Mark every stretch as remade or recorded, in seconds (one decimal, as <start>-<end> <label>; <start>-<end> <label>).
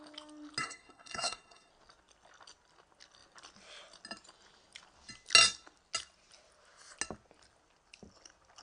0.0-0.6 recorded; 0.6-1.7 remade; 1.7-8.6 recorded